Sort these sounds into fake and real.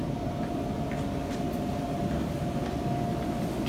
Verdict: real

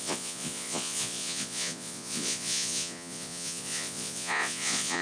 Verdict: fake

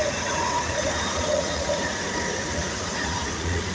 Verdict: fake